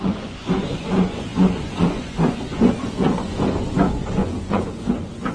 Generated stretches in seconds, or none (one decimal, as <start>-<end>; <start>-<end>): 0.0-5.3